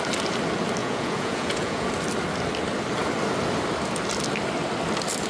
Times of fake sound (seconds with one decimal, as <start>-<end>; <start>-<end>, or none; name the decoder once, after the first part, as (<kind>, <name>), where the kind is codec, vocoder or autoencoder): 0.8-1.9 (vocoder, Vocos)

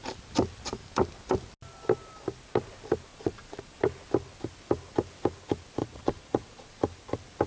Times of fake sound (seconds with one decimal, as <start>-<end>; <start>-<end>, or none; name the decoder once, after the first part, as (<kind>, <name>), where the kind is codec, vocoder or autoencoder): 3.1-3.8 (vocoder, Vocos); 5.8-6.8

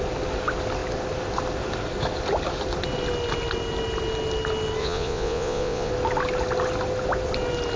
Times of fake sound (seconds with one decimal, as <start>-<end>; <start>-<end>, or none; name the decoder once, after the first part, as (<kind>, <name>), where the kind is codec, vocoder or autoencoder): 4.8-5.9 (vocoder, Vocos)

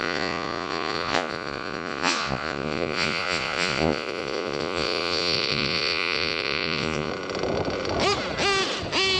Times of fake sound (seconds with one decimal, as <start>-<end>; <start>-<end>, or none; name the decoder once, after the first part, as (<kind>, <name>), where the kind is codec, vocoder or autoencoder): 0.0-7.1 (vocoder, Vocos)

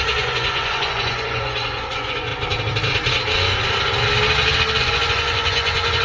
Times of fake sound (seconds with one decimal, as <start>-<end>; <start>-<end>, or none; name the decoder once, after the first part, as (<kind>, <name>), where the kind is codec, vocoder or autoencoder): 0.0-2.3 (vocoder, Vocos); 4.8-6.0

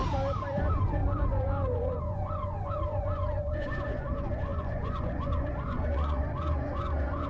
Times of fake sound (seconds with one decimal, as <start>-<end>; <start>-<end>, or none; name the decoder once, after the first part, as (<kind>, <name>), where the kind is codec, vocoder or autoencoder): 0.5-7.3 (vocoder, Vocos)

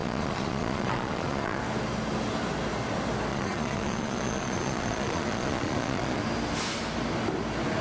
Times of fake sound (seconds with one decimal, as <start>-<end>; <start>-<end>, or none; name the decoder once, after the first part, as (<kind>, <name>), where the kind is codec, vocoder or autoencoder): 0.0-1.6 (vocoder, Vocos); 3.3-6.2

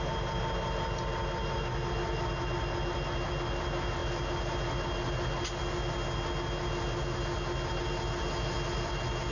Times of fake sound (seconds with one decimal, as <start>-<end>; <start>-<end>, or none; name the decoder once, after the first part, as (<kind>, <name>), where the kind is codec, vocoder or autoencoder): none